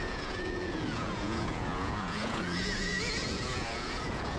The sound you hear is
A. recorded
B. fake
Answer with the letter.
B